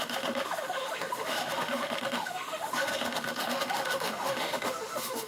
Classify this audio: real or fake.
fake